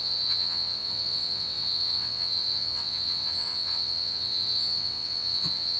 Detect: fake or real fake